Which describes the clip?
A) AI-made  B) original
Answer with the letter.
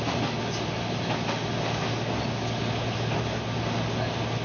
B